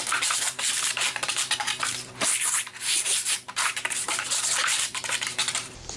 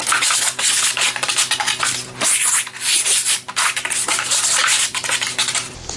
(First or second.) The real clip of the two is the second